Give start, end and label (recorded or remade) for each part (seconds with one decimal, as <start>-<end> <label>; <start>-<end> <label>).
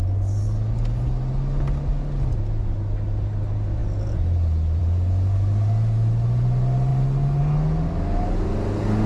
0.0-9.1 recorded